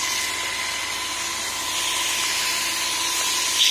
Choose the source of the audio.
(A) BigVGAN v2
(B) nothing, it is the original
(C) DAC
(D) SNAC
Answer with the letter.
B